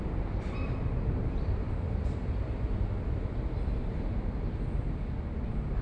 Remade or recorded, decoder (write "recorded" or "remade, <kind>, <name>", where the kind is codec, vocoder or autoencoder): recorded